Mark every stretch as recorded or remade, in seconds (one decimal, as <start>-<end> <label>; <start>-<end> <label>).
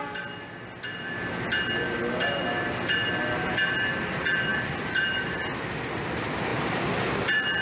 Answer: 0.0-4.5 recorded; 4.5-5.4 remade; 5.4-6.5 recorded; 6.5-7.6 remade